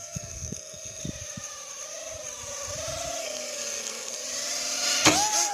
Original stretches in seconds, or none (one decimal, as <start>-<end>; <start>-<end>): 1.0-3.2; 4.2-5.5